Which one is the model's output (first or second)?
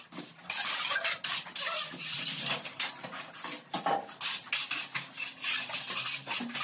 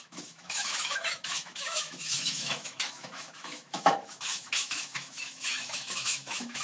second